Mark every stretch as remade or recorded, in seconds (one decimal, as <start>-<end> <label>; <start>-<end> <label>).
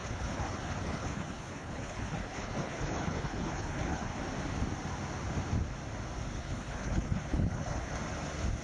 0.0-4.2 remade; 4.2-6.4 recorded; 6.4-7.9 remade; 7.9-8.6 recorded